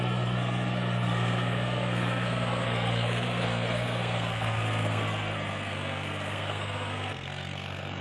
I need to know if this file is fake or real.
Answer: fake